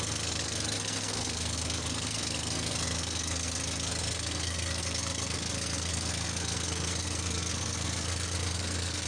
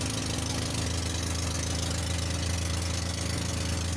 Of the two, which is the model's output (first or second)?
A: first